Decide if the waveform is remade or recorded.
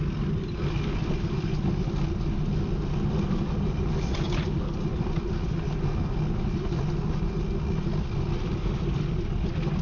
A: recorded